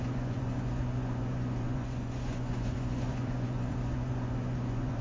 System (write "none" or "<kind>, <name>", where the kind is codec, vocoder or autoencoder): vocoder, Vocos